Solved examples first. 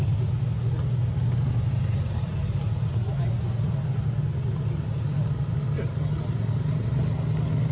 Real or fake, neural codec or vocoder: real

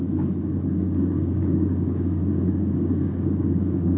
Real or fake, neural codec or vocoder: fake, codec, DAC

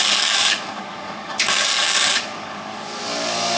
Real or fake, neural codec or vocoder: fake, codec, DAC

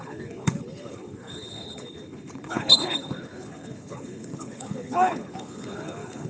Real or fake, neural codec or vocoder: fake, codec, HILCodec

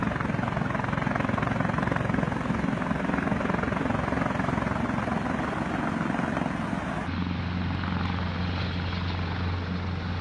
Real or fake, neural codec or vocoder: real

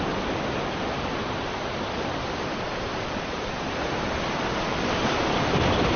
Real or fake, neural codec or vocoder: real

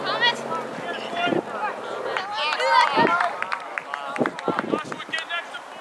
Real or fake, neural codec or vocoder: real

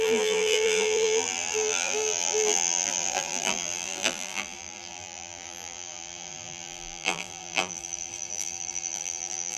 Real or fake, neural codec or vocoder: fake, vocoder, BigVGAN v2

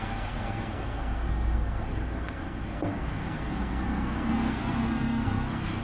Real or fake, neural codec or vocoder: fake, codec, SNAC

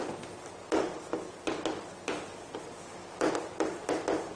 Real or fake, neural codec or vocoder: real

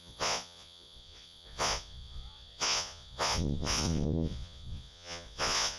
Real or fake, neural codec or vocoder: fake, vocoder, Vocos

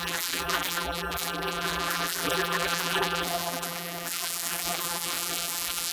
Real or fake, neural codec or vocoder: fake, vocoder, BigVGAN v2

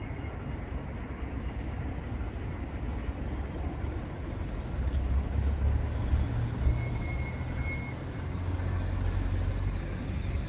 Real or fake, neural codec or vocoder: real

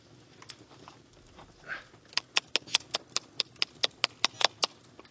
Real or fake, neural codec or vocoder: real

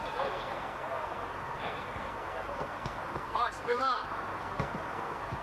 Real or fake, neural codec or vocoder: fake, codec, SNAC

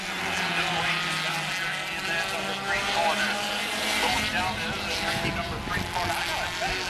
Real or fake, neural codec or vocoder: real